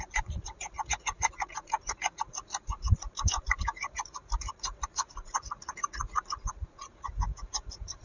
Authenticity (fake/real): fake